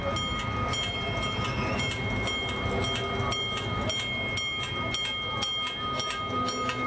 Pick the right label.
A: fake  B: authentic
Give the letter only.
B